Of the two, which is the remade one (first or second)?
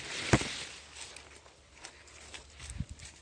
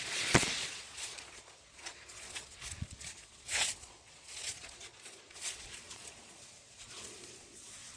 second